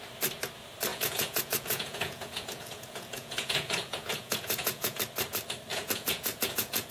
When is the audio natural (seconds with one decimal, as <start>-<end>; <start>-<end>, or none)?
0.0-0.9; 5.0-5.7